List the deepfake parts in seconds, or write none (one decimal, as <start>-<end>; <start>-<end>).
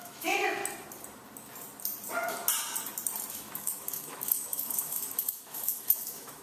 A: 0.0-0.6; 3.3-6.4